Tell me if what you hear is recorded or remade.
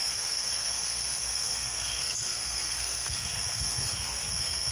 remade